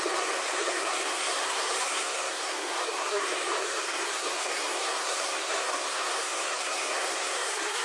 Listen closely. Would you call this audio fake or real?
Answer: fake